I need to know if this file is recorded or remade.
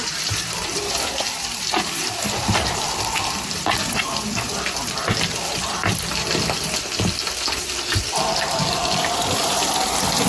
remade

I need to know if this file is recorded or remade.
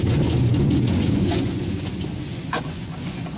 remade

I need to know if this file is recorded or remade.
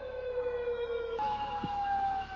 remade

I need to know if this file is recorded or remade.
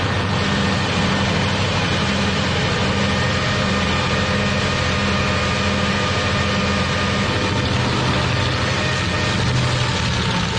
recorded